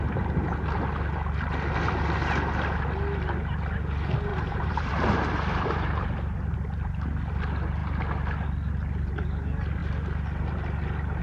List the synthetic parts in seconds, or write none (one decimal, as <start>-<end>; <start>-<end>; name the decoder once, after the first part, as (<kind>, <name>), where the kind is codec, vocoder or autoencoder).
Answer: 4.3-6.2 (vocoder, BigVGAN v2)